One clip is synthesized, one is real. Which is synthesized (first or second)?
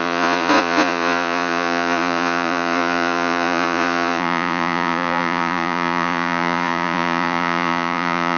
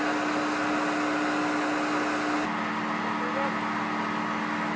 first